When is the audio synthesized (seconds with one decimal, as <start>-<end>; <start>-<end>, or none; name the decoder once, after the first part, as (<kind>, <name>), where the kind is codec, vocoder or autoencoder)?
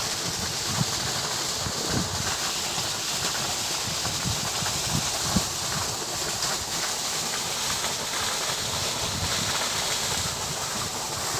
none